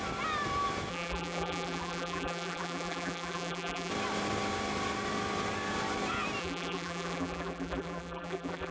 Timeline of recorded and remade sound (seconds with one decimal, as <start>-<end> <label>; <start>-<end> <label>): 0.0-0.9 recorded; 0.9-3.9 remade; 3.9-6.4 recorded; 6.4-8.7 remade